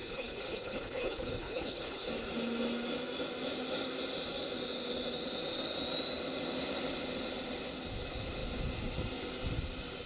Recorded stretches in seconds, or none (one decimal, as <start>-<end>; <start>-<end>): 2.1-10.1